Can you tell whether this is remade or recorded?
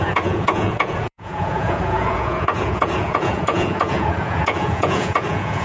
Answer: remade